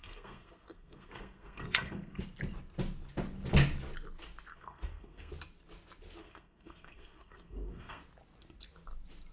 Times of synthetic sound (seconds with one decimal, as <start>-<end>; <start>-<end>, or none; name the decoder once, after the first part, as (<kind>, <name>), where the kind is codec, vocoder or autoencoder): 0.0-2.2 (codec, SNAC); 4.5-5.3; 6.2-8.0

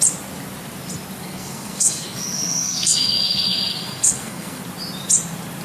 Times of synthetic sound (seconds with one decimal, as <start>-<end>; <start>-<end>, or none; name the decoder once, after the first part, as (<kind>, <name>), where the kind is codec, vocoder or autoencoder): 1.2-4.6 (codec, SNAC)

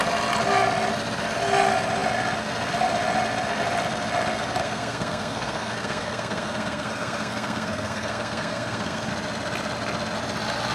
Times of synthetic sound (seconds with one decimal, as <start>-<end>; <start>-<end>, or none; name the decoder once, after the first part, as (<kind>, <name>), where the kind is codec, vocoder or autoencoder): 4.6-9.1 (codec, SNAC)

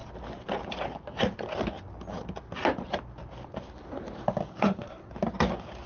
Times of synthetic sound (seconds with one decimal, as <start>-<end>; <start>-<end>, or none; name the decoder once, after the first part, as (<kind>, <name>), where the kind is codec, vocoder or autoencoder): 4.5-5.1 (codec, SNAC)

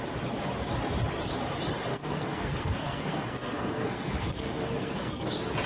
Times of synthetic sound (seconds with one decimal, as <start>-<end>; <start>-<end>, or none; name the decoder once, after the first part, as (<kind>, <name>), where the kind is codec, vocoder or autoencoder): 1.9-5.3 (codec, SNAC)